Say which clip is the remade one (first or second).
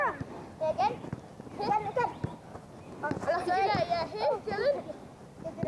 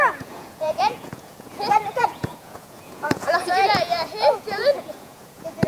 second